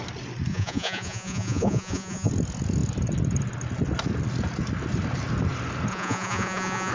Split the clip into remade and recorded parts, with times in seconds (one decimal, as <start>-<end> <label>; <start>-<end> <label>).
0.0-0.5 recorded; 0.5-2.3 remade; 2.3-5.9 recorded; 5.9-6.9 remade